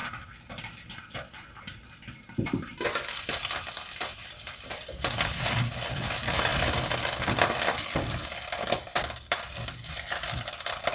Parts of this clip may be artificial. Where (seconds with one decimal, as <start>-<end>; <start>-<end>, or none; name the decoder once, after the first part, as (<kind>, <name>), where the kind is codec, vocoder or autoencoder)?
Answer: 0.5-6.5 (vocoder, BigVGAN v2); 7.3-10.9